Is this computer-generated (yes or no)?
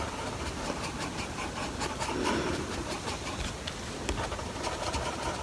no